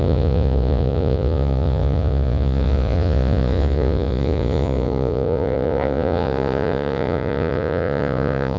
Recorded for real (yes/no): no